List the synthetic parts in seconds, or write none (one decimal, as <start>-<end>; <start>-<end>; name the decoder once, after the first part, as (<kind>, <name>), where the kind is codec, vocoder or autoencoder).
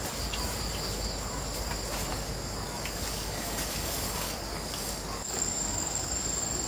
2.1-6.1 (codec, DAC)